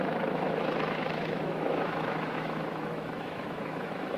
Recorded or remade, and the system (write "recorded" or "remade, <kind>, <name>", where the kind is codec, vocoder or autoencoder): remade, autoencoder, DAC-VAE